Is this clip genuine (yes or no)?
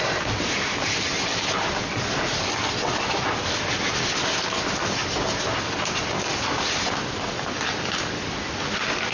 yes